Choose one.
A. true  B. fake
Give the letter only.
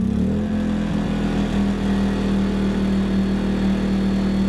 A